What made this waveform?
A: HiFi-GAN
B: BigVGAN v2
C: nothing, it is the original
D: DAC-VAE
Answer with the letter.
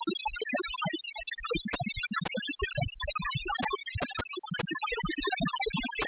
C